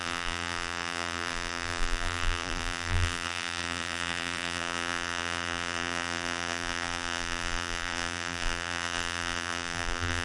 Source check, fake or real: fake